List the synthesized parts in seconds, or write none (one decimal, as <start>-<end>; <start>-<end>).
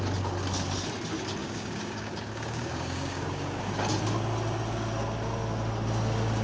1.4-3.6